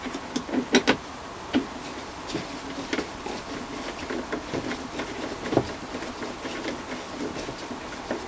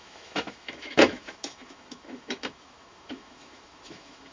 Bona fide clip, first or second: first